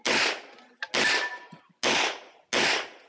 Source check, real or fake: real